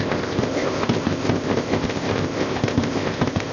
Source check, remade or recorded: remade